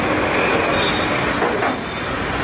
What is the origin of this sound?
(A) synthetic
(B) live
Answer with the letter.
B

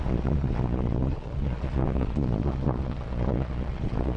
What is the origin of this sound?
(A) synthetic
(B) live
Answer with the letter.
A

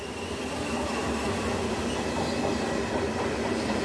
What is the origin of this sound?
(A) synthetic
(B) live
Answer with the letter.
B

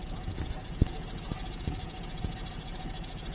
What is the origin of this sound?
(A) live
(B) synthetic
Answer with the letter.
B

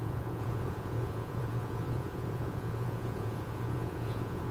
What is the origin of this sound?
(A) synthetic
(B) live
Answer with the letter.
A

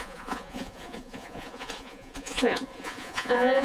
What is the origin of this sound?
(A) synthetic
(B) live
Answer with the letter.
A